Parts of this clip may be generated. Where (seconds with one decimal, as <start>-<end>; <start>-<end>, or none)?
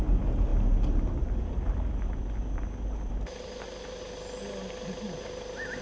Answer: none